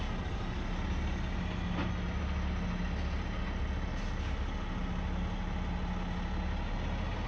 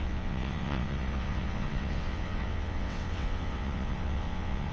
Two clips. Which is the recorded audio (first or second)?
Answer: first